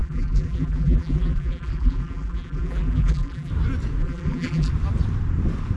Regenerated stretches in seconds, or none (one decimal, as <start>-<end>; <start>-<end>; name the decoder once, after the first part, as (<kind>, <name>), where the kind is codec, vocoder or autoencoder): 0.0-3.5 (vocoder, BigVGAN v2); 4.0-4.7